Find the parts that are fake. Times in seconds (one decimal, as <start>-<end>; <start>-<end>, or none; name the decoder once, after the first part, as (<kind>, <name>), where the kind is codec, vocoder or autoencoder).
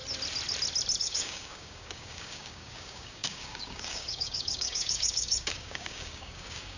1.0-6.8 (codec, DAC)